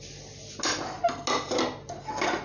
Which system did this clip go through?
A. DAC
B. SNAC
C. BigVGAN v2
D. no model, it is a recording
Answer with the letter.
D